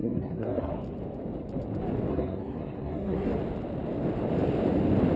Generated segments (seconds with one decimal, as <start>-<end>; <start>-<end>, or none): 0.0-0.7; 2.1-3.3